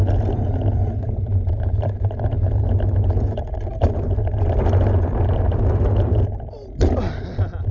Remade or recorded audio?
recorded